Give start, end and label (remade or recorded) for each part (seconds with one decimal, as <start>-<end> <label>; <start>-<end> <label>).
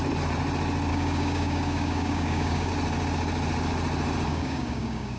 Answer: 0.0-0.9 recorded; 0.9-2.7 remade; 2.7-4.3 recorded; 4.3-5.2 remade